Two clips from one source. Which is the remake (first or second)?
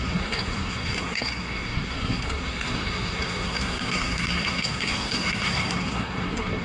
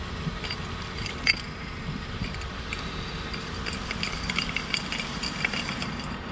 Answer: first